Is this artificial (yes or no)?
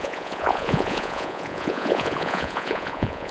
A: yes